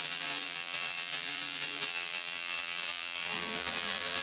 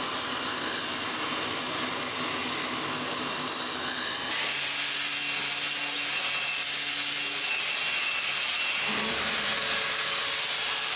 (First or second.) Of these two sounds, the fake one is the first